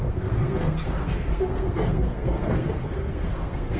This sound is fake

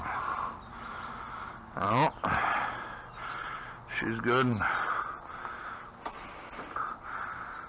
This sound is real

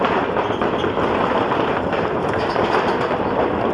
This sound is real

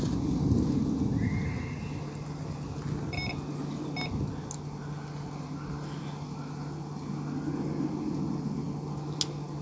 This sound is real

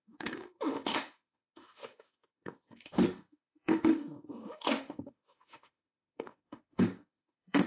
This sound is fake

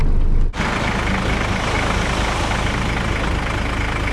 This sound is real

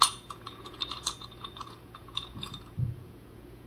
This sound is fake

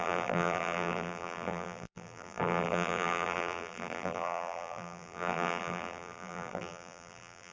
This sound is fake